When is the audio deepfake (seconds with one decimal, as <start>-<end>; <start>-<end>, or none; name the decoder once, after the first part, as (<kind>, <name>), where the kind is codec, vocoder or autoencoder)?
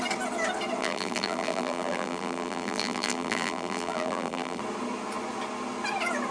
0.8-4.6 (vocoder, BigVGAN v2)